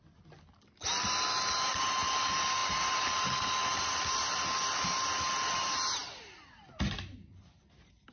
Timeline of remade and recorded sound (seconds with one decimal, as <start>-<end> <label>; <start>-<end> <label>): 0.0-8.1 recorded